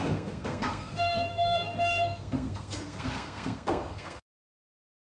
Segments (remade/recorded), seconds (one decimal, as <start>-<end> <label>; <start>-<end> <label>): 0.0-5.0 remade